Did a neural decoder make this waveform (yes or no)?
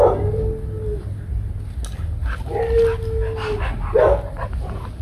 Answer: no